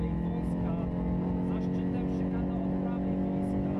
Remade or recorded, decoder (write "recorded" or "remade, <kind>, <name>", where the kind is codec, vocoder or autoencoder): recorded